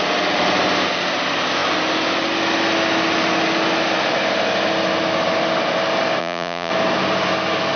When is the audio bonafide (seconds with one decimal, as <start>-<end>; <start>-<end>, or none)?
0.0-6.2; 6.7-7.8